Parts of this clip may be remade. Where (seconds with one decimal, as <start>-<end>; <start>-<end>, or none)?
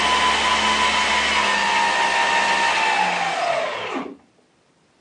none